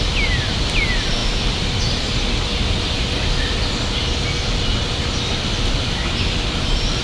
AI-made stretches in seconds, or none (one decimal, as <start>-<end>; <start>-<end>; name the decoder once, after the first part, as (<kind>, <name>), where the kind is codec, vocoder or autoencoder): none